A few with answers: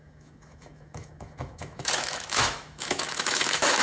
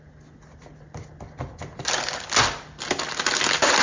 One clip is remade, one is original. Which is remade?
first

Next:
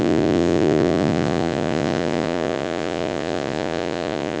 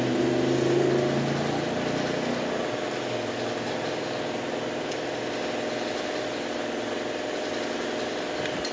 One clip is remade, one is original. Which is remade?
first